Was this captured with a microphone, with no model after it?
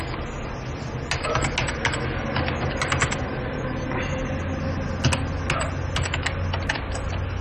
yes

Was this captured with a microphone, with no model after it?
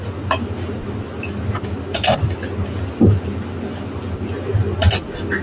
yes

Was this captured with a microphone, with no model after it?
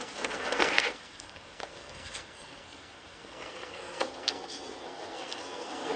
no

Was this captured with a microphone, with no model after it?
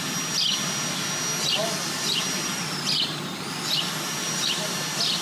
yes